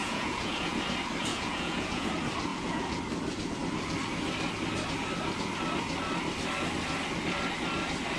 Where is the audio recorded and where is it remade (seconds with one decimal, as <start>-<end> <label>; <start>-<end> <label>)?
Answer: 0.0-0.8 remade; 0.8-1.3 recorded; 1.3-2.1 remade; 2.1-2.5 recorded; 2.5-3.0 remade; 3.0-8.2 recorded